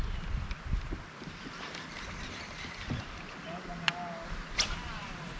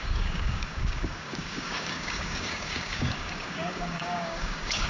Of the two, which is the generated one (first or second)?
second